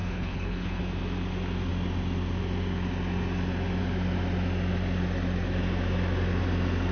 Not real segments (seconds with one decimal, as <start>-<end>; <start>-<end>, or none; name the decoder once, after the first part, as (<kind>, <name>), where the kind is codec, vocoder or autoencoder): 0.0-0.8 (codec, HILCodec)